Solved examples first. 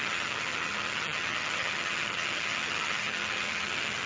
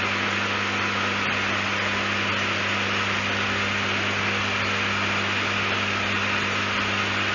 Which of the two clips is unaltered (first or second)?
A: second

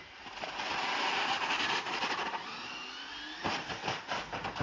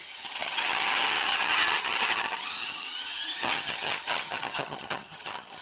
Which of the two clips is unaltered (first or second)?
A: first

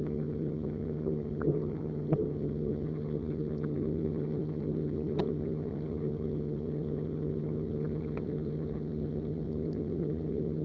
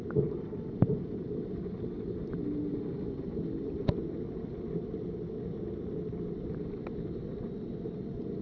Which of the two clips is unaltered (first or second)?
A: second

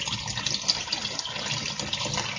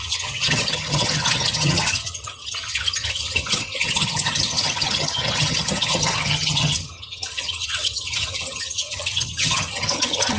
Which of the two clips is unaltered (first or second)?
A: first